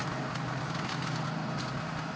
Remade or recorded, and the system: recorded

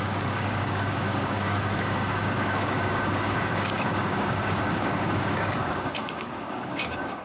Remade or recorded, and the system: remade, codec, DAC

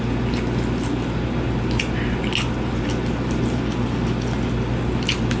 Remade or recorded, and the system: recorded